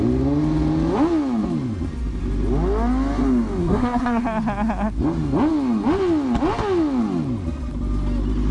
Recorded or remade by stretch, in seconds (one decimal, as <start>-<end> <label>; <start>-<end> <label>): 0.0-3.6 recorded; 3.6-4.2 remade; 4.2-8.5 recorded